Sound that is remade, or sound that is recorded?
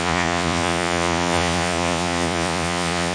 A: remade